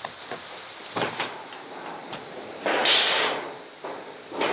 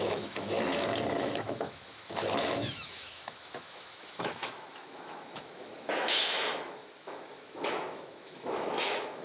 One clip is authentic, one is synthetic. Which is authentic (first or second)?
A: first